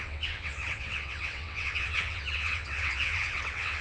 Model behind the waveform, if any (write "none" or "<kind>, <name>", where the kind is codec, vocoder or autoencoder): vocoder, WaveNeXt